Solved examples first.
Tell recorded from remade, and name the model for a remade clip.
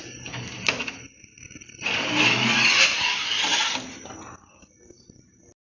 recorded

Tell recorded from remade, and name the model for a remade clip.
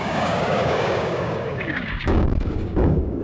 remade, codec, DAC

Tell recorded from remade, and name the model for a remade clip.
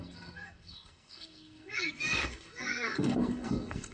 remade, codec, SNAC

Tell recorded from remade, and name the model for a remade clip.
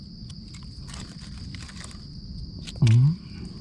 recorded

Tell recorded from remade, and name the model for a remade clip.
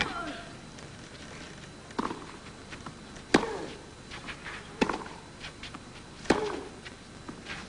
recorded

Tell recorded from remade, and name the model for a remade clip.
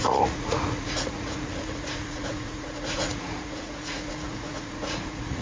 remade, vocoder, Vocos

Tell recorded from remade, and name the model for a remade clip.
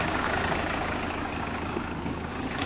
remade, codec, DAC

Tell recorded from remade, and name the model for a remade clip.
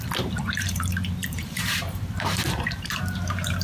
remade, vocoder, BigVGAN v2